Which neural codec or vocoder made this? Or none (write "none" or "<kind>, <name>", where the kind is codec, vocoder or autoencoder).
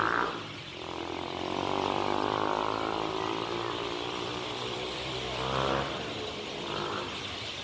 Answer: vocoder, BigVGAN v2